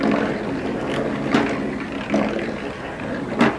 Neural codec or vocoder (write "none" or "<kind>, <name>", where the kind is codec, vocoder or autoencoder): none